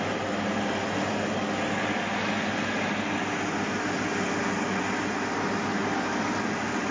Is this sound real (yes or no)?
yes